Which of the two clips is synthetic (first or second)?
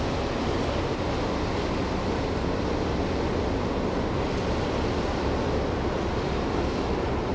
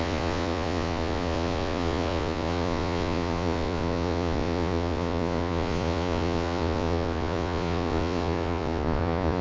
second